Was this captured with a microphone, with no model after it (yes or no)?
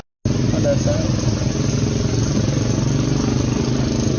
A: yes